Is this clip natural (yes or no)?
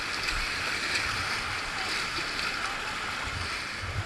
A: yes